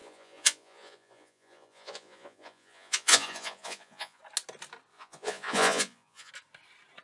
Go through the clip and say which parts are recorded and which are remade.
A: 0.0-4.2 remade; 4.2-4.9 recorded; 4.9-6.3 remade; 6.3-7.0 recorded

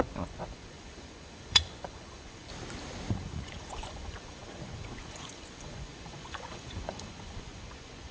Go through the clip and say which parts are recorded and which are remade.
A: 0.0-2.5 remade; 2.5-3.1 recorded; 3.1-8.1 remade

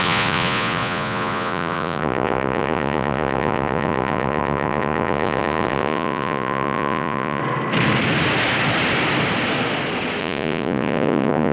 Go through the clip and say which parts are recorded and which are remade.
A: 0.0-7.4 remade; 7.4-10.2 recorded; 10.2-11.5 remade

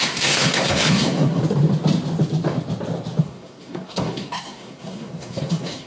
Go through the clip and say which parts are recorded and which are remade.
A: 0.0-1.4 remade; 1.4-3.2 recorded; 3.2-5.9 remade

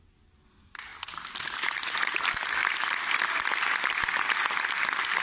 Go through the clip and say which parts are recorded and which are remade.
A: 0.0-0.9 recorded; 0.9-1.7 remade; 1.7-5.2 recorded

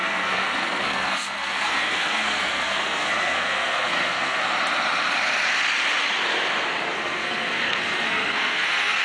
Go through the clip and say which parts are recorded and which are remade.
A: 0.0-4.4 remade; 4.4-6.9 recorded; 6.9-9.0 remade

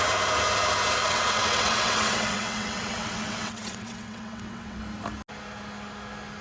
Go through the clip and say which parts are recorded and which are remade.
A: 0.0-1.0 recorded; 1.0-4.8 remade; 4.8-6.4 recorded

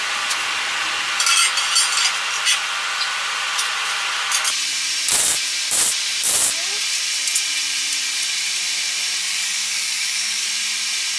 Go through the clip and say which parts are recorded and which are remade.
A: 0.0-9.2 recorded; 9.2-10.5 remade; 10.5-11.2 recorded